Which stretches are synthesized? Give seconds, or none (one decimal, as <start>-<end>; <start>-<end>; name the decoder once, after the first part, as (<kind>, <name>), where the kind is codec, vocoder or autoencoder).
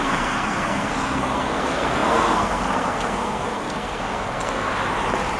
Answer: 0.0-4.7 (codec, SNAC)